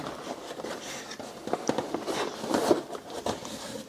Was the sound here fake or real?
real